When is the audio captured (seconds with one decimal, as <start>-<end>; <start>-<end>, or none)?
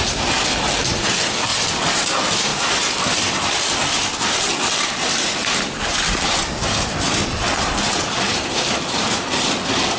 1.5-2.1; 2.5-4.7; 5.4-7.9